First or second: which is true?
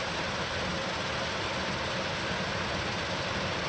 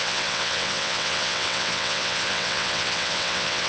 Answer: first